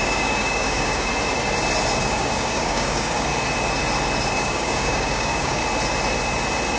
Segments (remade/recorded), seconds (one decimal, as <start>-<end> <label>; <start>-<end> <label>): 0.0-1.1 remade; 1.1-2.0 recorded; 2.0-3.3 remade; 3.3-4.3 recorded; 4.3-5.6 remade; 5.6-6.8 recorded